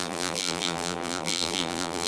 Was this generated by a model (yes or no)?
yes